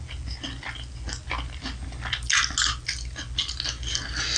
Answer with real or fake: real